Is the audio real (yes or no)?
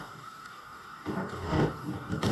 no